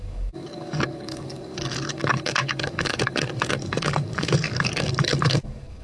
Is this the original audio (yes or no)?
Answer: no